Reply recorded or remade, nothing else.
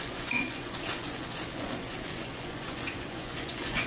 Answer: remade